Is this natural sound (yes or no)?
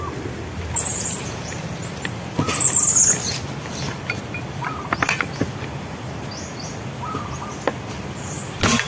yes